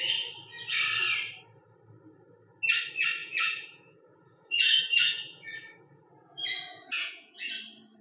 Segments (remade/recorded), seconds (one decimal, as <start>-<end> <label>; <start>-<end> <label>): 0.0-3.2 recorded; 3.2-7.5 remade; 7.5-8.0 recorded

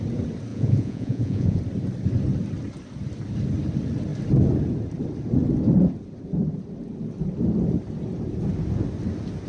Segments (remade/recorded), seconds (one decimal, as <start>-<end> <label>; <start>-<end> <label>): 0.0-0.5 recorded; 0.5-1.6 remade; 1.6-9.5 recorded